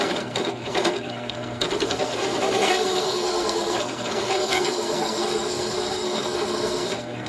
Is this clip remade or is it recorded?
remade